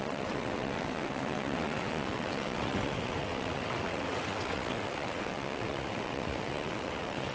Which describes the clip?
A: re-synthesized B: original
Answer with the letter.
A